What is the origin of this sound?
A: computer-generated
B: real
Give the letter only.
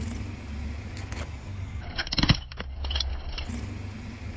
B